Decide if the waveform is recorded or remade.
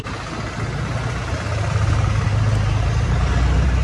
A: recorded